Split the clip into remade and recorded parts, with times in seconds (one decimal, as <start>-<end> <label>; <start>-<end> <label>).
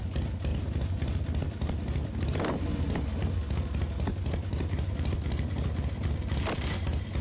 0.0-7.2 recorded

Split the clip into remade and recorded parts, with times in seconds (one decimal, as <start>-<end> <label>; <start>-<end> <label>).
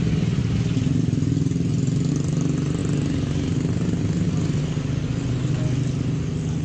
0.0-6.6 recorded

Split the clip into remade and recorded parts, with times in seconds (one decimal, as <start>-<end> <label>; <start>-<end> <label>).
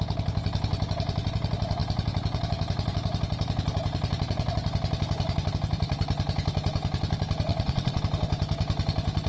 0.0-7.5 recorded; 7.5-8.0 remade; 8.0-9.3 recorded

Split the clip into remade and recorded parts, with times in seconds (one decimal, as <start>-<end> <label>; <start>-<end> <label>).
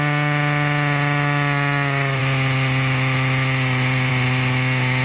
0.0-5.0 recorded